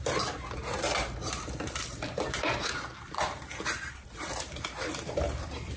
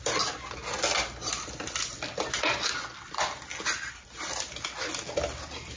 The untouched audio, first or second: second